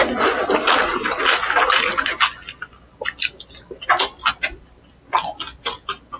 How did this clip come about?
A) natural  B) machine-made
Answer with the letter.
A